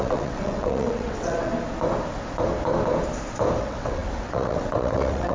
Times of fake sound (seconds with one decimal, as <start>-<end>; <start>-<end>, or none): 0.0-1.5; 3.6-5.3